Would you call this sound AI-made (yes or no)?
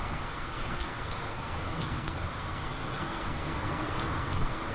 yes